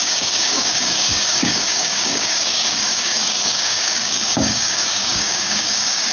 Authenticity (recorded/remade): remade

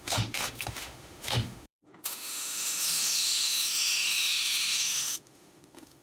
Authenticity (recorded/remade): remade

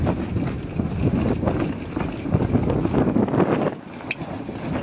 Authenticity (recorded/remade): recorded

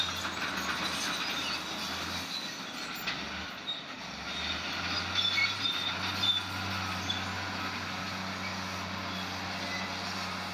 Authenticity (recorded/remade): recorded